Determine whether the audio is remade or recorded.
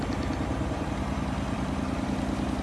remade